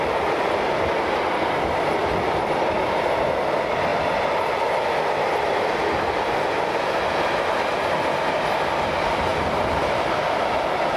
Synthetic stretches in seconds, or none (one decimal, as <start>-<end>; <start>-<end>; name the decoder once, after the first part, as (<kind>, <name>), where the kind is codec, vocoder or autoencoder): 2.0-2.6 (vocoder, BigVGAN v2); 9.3-10.0